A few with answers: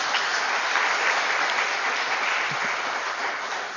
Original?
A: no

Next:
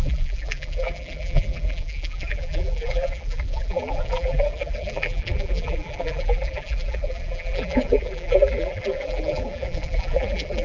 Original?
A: no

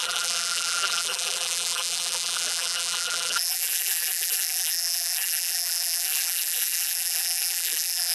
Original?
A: no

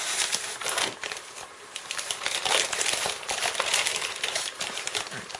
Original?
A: no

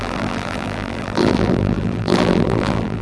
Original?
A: no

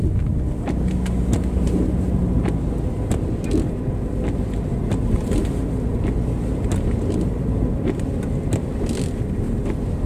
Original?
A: yes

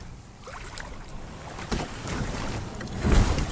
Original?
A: no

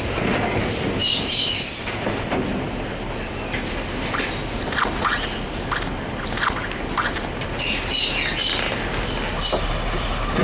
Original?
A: yes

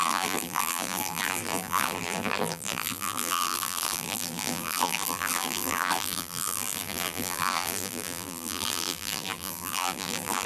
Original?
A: no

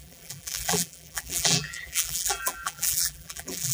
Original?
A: no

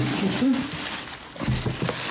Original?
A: yes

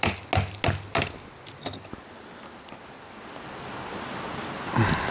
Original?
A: yes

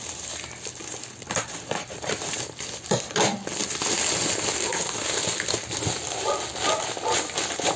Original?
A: yes